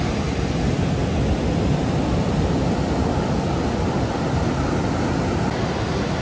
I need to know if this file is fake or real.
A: real